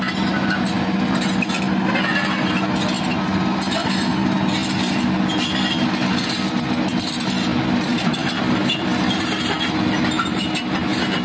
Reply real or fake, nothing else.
real